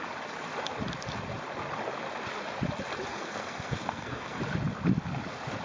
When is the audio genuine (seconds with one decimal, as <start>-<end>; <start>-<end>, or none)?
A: 0.0-3.1; 4.4-5.6